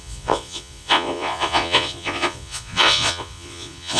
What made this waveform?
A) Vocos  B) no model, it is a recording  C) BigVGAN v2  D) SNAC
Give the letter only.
A